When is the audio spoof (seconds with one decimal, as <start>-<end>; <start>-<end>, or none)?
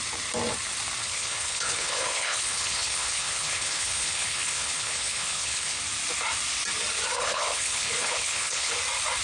1.0-5.8; 7.2-8.7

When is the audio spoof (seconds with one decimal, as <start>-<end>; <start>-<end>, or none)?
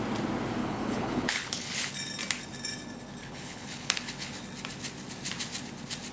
0.6-1.9; 3.2-4.4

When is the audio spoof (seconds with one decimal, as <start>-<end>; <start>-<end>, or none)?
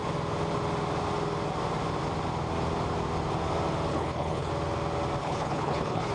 3.9-4.5; 5.2-6.1